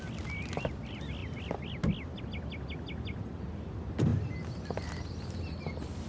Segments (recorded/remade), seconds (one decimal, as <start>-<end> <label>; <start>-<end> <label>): 0.0-6.1 recorded